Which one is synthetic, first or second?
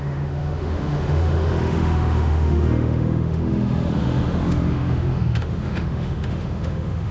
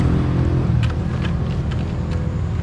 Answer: first